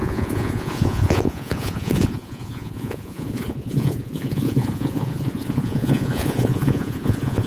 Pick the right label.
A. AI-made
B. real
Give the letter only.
A